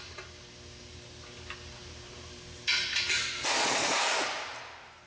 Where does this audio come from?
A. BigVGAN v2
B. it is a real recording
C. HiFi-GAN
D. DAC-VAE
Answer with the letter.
B